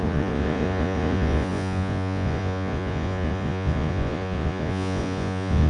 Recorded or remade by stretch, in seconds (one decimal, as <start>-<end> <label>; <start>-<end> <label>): 0.0-5.7 remade